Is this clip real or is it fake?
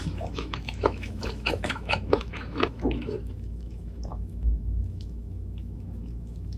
fake